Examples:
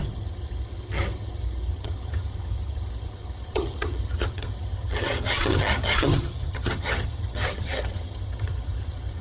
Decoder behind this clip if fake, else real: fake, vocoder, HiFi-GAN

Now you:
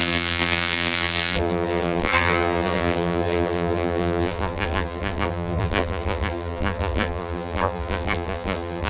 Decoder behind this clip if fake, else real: fake, vocoder, BigVGAN v2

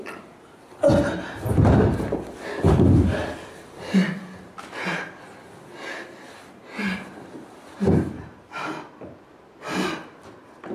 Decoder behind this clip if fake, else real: real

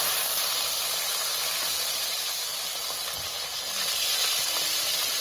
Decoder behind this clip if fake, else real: real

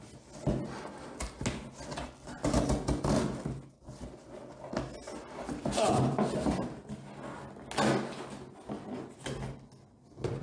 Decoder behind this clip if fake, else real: real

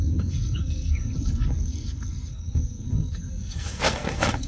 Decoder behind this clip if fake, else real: fake, codec, SNAC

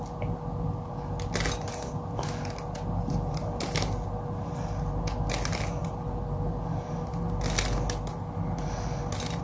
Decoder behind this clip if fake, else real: real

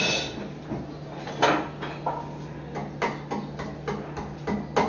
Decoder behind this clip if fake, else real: real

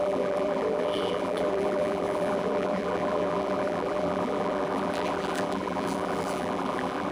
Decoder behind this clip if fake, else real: fake, vocoder, BigVGAN v2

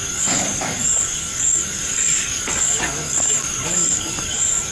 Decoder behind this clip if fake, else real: fake, codec, DAC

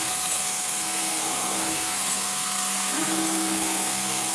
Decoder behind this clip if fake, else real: fake, codec, SNAC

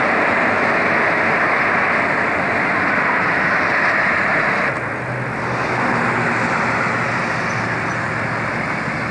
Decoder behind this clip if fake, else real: real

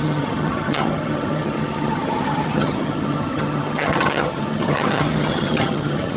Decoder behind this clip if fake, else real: fake, vocoder, HiFi-GAN